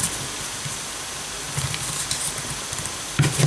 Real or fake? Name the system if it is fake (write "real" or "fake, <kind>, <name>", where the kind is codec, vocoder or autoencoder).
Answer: real